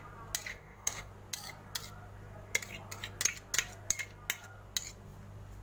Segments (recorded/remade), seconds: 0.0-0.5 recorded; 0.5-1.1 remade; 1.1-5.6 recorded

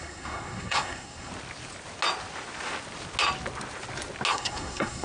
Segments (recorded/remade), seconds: 0.0-1.3 remade; 1.3-4.3 recorded; 4.3-5.0 remade

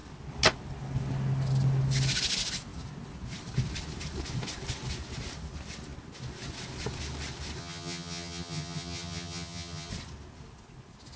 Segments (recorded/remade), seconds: 0.0-7.6 recorded; 7.6-9.9 remade; 9.9-11.2 recorded